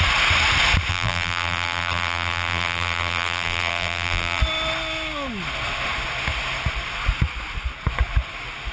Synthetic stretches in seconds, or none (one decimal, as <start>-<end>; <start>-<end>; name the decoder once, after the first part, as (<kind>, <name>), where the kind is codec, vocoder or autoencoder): 0.9-4.4 (vocoder, BigVGAN v2)